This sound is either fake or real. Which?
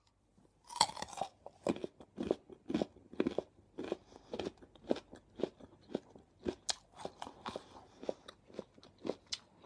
real